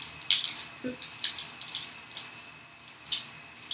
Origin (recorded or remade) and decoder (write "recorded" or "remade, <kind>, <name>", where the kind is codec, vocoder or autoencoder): recorded